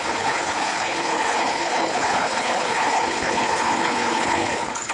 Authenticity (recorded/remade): remade